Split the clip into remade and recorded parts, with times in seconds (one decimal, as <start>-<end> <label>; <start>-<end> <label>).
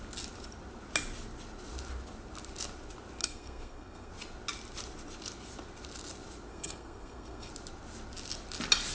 0.0-3.2 recorded; 3.2-4.1 remade; 4.1-6.5 recorded; 6.5-7.5 remade; 7.5-8.9 recorded